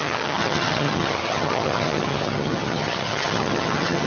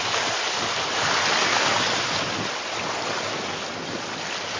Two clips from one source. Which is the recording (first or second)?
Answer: second